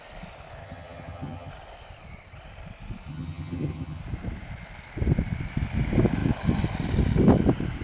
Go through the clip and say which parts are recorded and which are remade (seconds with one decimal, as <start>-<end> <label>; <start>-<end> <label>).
0.0-0.6 recorded; 0.6-1.5 remade; 1.5-3.1 recorded; 3.1-4.0 remade; 4.0-7.8 recorded